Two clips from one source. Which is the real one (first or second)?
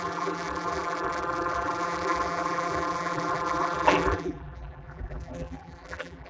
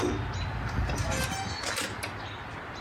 second